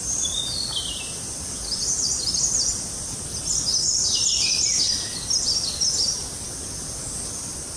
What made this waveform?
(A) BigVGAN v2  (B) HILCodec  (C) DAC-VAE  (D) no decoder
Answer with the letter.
D